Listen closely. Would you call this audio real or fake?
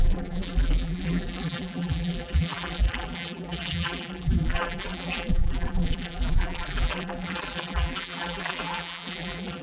fake